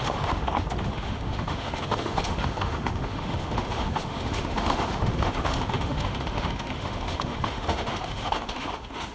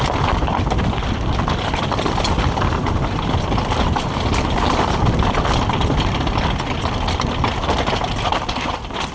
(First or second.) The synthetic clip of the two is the first